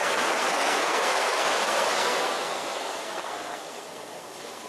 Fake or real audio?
fake